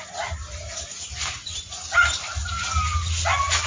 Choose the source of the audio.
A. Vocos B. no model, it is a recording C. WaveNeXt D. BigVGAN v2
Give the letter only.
B